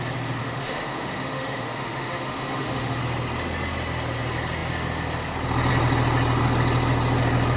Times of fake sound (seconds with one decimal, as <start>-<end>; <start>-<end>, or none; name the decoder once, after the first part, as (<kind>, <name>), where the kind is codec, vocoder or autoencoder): 0.4-3.0 (autoencoder, DAC-VAE)